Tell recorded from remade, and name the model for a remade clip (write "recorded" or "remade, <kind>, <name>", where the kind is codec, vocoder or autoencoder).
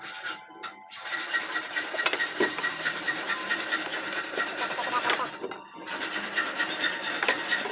remade, vocoder, BigVGAN v2